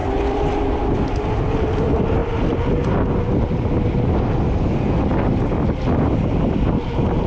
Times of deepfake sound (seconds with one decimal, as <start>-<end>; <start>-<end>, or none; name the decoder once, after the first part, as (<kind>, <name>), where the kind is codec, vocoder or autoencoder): none